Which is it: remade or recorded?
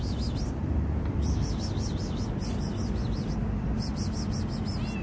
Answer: recorded